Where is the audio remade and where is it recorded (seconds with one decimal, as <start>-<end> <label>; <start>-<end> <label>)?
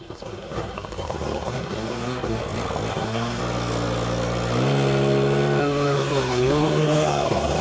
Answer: 0.0-2.4 remade; 2.4-2.9 recorded; 2.9-3.4 remade; 3.4-5.6 recorded; 5.6-7.6 remade